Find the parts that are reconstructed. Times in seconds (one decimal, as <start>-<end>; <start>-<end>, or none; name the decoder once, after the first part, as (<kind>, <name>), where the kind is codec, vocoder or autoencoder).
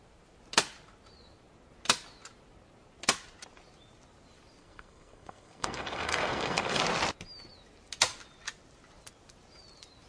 4.6-6.8 (codec, SNAC)